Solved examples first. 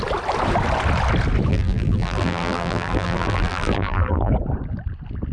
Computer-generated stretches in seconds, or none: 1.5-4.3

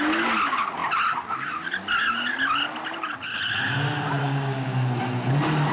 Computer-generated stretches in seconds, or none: 4.2-5.0

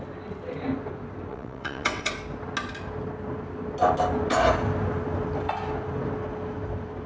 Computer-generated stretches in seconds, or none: 1.3-2.1

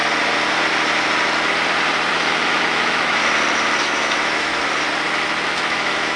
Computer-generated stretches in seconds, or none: 2.1-3.2; 3.8-4.5; 5.5-6.2

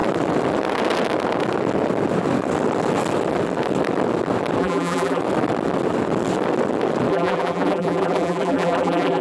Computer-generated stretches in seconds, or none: 4.6-5.2; 7.1-9.2

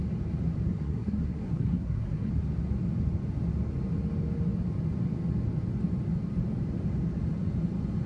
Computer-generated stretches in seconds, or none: 0.7-2.3

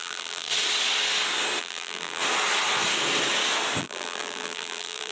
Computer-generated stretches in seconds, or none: 0.0-0.5; 1.6-2.2; 3.8-5.1

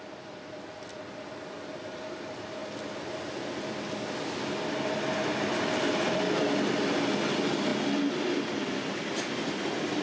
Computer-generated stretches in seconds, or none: none